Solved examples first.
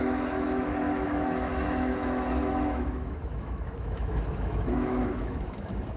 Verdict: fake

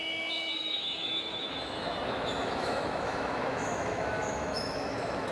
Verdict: fake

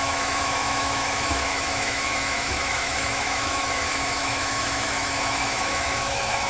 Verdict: fake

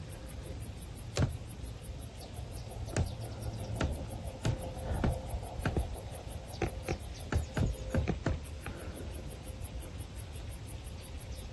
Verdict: real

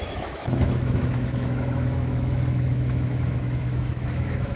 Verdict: fake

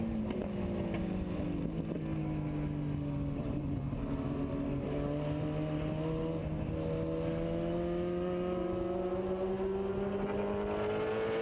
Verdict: real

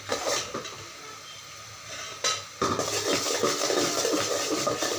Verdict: real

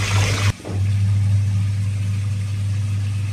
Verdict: real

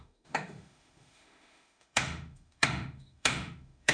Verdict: fake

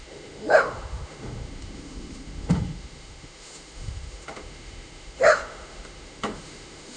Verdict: fake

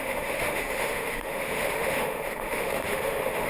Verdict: fake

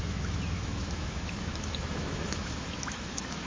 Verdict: fake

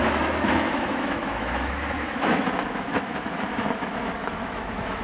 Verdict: fake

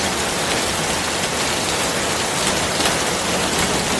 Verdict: real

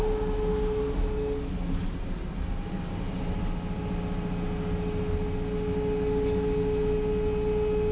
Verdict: real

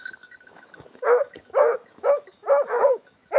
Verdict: fake